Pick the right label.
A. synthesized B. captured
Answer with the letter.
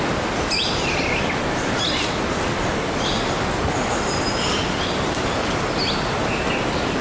B